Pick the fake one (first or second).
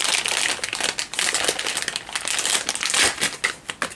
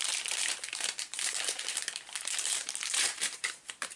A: second